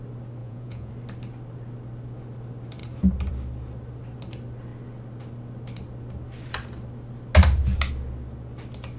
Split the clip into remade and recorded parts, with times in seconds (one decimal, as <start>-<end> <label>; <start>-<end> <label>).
0.0-0.4 recorded; 0.4-0.9 remade; 0.9-9.0 recorded